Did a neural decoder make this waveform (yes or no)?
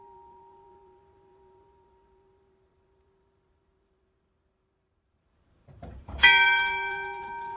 yes